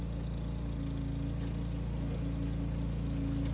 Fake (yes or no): no